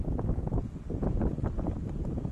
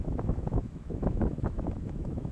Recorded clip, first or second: first